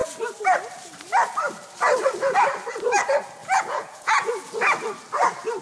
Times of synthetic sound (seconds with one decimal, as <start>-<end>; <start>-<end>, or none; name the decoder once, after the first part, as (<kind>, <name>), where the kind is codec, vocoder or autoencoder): 3.4-4.3 (vocoder, Vocos)

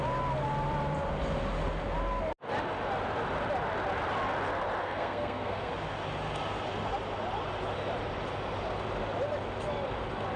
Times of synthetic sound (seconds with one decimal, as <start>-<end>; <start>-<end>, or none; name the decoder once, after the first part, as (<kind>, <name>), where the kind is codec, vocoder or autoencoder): 4.8-5.7 (codec, SNAC)

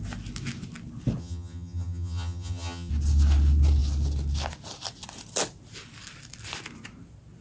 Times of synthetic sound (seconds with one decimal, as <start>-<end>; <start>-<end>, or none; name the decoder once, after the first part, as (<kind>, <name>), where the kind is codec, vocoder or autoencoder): 1.2-2.9 (vocoder, HiFi-GAN)

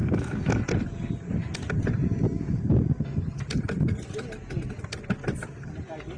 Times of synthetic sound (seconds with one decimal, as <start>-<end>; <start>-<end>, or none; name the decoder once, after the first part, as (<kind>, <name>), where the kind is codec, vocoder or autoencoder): 0.0-0.6 (autoencoder, DAC-VAE)